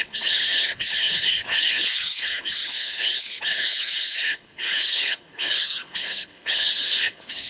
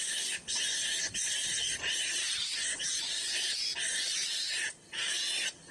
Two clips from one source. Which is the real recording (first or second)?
second